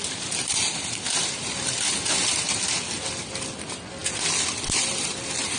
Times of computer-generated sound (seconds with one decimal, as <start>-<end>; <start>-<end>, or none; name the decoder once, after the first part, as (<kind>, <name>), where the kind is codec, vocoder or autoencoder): none

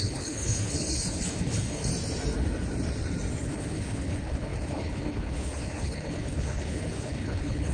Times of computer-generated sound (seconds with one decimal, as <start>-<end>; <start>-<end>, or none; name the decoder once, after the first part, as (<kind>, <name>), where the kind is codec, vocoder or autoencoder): 0.0-1.9 (codec, HILCodec); 3.4-7.7

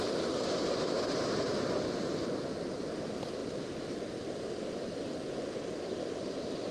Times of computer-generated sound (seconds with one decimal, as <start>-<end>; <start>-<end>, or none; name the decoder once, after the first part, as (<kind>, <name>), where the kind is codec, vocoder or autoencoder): 0.0-1.5 (vocoder, BigVGAN v2); 2.7-3.4; 6.3-6.7

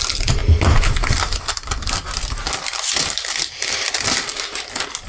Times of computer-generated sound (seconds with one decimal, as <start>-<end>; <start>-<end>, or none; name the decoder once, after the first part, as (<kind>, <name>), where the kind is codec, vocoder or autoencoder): none